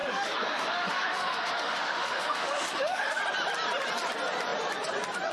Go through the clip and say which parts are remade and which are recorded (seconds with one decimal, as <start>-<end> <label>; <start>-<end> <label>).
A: 0.0-3.2 remade; 3.2-5.3 recorded